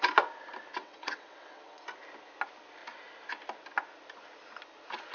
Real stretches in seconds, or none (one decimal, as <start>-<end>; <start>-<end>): 0.0-0.8; 1.8-5.1